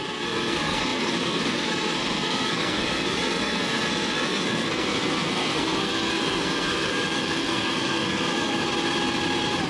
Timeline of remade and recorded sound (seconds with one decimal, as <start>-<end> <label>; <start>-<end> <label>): 0.0-8.6 remade; 8.6-9.7 recorded